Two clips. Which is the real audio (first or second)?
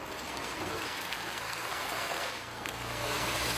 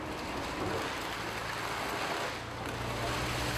second